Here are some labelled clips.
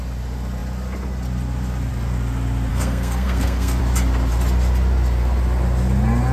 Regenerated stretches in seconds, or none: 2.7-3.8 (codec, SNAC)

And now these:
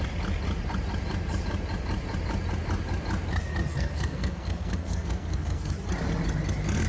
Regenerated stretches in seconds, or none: 3.7-5.7 (codec, SNAC)

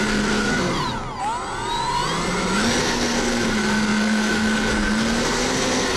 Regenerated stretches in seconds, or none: 0.0-0.7 (codec, SNAC); 2.8-6.0

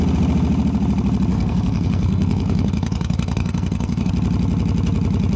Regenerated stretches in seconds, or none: 1.3-4.1 (codec, SNAC)

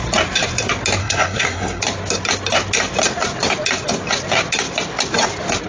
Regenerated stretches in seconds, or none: 1.0-1.8 (codec, SNAC)

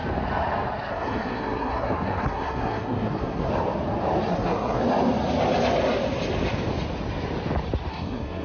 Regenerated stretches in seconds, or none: 0.9-3.5 (codec, SNAC); 4.3-4.8; 7.9-8.4